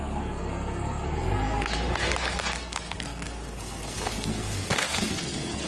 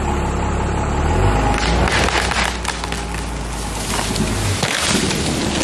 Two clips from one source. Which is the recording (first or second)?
second